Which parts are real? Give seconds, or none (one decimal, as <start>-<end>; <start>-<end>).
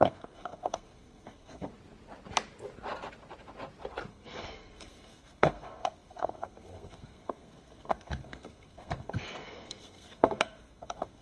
1.7-4.1